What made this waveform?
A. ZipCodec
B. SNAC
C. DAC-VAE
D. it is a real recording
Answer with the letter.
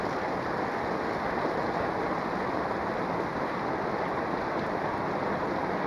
D